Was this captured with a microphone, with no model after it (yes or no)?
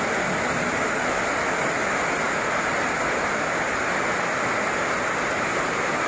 yes